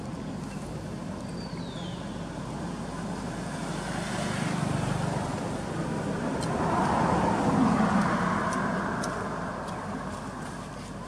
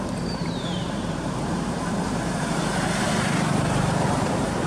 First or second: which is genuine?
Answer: first